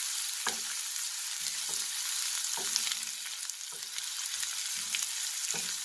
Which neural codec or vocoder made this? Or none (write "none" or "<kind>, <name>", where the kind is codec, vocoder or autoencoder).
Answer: none